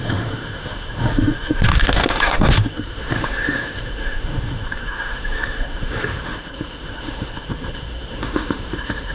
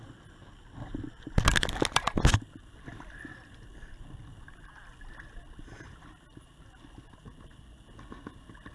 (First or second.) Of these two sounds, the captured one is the second